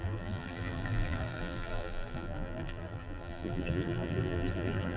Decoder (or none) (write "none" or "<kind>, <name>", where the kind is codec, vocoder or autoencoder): vocoder, BigVGAN v2